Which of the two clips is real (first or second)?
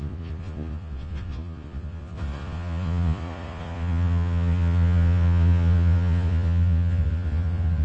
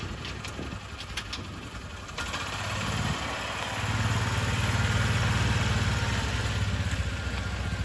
second